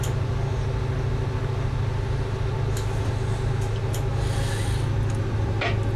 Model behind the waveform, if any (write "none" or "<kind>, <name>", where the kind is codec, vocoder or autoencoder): none